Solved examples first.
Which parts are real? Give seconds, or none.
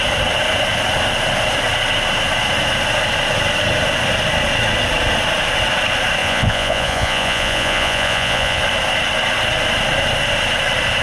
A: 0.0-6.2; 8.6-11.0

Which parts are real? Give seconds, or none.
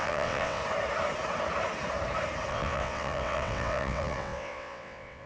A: 0.6-2.5